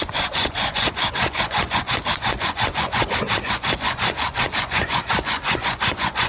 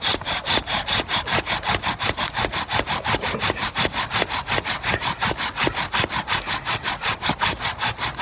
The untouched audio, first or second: second